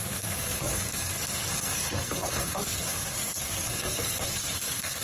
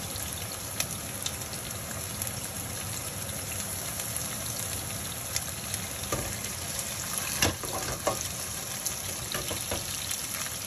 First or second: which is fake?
first